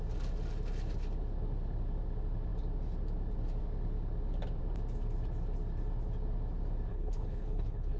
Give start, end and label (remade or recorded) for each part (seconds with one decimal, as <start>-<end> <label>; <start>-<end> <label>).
0.0-6.9 recorded; 6.9-8.0 remade